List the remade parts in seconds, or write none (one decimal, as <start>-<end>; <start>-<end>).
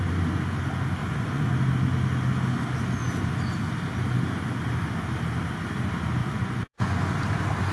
1.0-1.5; 6.2-7.0